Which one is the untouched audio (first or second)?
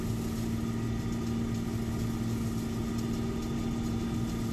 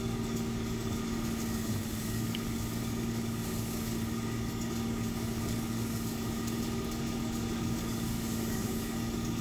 first